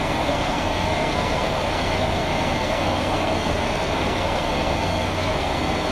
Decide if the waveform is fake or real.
fake